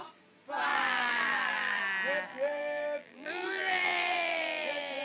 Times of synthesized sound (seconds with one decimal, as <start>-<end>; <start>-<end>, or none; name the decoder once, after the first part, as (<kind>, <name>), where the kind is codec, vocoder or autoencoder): 0.7-1.8 (vocoder, BigVGAN v2); 2.3-5.0